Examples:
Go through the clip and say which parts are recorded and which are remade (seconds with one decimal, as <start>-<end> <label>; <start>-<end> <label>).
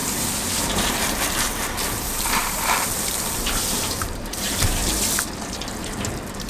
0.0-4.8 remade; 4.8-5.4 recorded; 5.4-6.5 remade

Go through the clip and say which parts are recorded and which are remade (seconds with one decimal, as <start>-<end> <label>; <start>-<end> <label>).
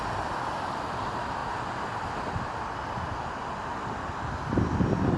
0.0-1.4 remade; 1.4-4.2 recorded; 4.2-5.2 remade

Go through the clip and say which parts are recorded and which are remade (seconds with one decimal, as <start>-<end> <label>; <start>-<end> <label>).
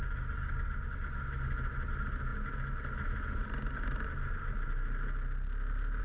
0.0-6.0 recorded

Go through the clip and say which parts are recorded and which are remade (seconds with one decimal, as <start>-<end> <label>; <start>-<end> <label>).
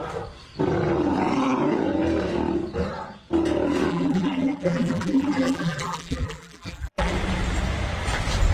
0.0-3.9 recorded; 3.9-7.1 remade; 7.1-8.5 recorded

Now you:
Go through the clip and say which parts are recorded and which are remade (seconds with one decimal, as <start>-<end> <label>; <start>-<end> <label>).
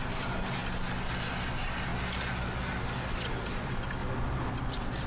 0.0-0.6 remade; 0.6-1.1 recorded; 1.1-1.9 remade; 1.9-2.8 recorded; 2.8-4.0 remade; 4.0-4.5 recorded; 4.5-5.1 remade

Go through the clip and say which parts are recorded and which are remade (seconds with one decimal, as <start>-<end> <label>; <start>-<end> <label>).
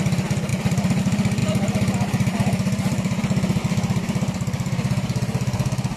0.0-6.0 remade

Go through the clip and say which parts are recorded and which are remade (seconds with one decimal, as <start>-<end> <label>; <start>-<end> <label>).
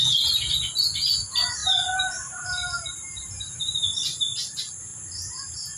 0.0-1.6 recorded; 1.6-3.8 remade; 3.8-5.8 recorded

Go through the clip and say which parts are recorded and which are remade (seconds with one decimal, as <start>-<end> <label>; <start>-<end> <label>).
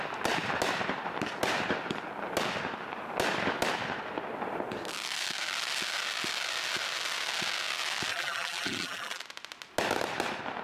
0.0-8.1 recorded; 8.1-9.2 remade; 9.2-10.6 recorded